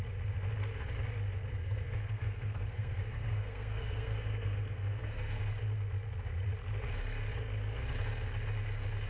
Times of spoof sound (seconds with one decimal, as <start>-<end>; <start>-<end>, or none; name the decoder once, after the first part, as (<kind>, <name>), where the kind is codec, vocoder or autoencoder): 1.5-5.4 (codec, SNAC)